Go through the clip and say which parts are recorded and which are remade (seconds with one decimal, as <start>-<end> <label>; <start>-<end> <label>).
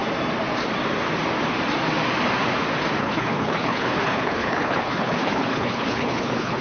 0.0-3.0 recorded; 3.0-6.6 remade